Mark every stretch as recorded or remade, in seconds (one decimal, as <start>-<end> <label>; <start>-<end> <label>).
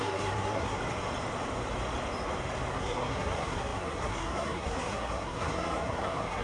0.0-0.8 remade; 0.8-2.7 recorded; 2.7-6.4 remade